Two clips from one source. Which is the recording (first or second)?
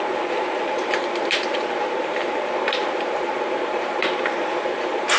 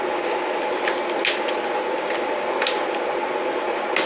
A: second